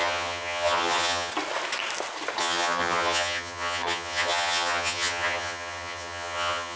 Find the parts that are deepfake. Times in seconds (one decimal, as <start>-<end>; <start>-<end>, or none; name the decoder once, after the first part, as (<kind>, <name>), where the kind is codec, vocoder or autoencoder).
0.0-1.3 (vocoder, HiFi-GAN); 2.4-6.8